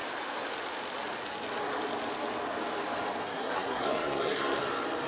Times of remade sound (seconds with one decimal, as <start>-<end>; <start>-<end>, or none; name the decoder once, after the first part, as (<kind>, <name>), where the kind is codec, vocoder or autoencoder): 3.2-4.6 (codec, SNAC)

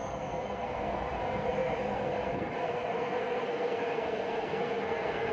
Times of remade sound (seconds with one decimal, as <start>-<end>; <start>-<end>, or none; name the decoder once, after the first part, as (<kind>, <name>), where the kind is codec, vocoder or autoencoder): 0.0-5.3 (codec, SNAC)

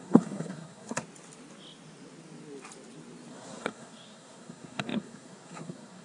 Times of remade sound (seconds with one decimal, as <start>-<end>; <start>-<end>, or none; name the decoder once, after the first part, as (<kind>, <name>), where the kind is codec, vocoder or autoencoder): 0.0-1.0 (codec, SNAC); 3.3-6.0

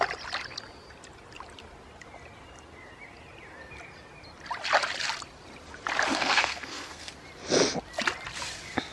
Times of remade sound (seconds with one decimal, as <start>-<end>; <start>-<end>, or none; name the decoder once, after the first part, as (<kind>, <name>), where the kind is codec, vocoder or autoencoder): 6.1-7.1 (codec, SNAC)

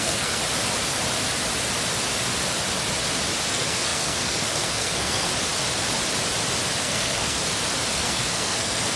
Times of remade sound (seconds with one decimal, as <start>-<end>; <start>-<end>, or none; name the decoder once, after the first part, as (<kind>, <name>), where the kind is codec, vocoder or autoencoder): 0.0-0.4 (codec, SNAC); 3.5-5.3; 6.8-7.4; 7.9-9.0